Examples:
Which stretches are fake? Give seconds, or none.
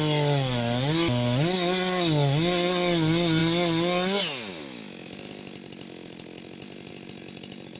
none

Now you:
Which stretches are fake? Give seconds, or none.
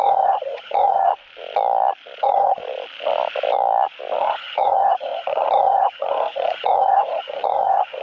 0.0-1.1 (vocoder, HiFi-GAN); 2.2-2.6; 4.2-8.0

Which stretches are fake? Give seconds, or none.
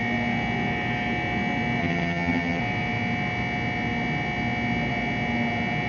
1.8-2.6 (vocoder, HiFi-GAN)